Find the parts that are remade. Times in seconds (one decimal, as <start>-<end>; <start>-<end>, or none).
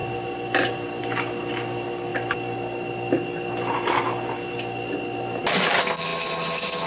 none